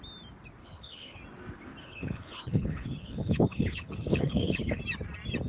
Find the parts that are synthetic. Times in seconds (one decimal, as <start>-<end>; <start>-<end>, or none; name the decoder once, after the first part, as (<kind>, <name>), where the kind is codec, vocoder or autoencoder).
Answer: 0.6-1.2 (codec, HILCodec); 1.8-4.8